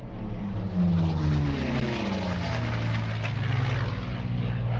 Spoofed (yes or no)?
no